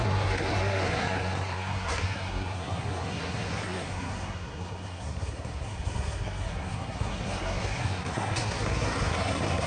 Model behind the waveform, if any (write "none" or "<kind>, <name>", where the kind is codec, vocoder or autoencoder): codec, SNAC